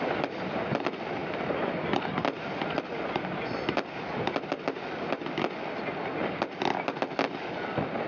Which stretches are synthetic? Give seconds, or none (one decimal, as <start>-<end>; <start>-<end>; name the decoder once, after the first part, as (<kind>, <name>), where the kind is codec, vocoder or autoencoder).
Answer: none